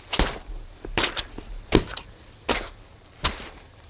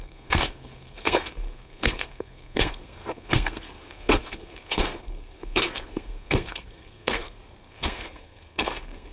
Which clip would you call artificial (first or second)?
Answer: second